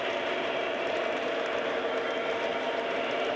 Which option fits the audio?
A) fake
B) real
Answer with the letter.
B